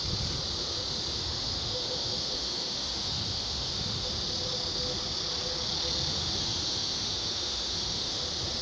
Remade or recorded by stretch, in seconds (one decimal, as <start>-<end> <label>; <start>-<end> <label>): 0.0-1.1 recorded; 1.1-4.1 remade; 4.1-6.1 recorded; 6.1-8.2 remade; 8.2-8.6 recorded